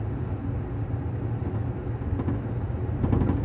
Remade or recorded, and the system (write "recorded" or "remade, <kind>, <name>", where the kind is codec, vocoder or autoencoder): recorded